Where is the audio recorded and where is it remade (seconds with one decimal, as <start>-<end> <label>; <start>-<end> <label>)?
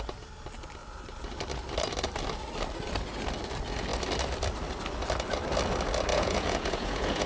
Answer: 0.0-6.1 recorded; 6.1-7.3 remade